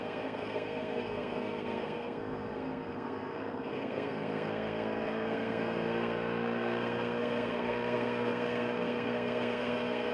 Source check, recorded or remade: remade